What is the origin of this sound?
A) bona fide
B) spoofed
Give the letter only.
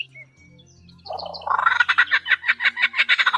A